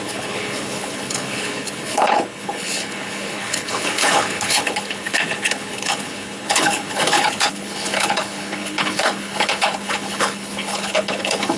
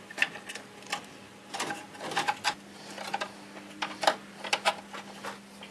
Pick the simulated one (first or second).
first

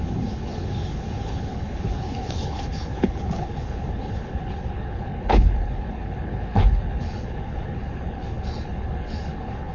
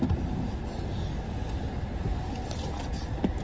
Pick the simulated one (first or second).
first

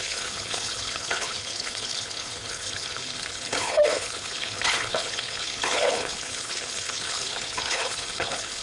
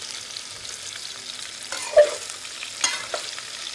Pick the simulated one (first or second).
first